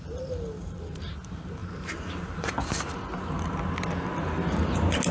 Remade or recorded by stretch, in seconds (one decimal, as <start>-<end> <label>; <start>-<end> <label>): 0.0-0.6 recorded; 0.6-1.1 remade; 1.1-1.6 recorded; 1.6-2.5 remade; 2.5-5.1 recorded